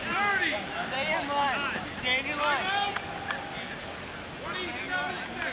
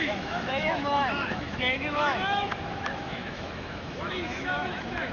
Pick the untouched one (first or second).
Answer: first